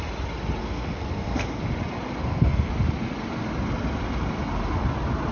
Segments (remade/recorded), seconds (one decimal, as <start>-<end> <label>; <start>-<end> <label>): 0.0-0.6 recorded; 0.6-1.6 remade; 1.6-2.2 recorded; 2.2-2.7 remade; 2.7-5.3 recorded